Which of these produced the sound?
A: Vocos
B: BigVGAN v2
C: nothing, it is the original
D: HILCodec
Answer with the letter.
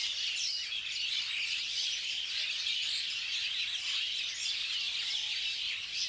C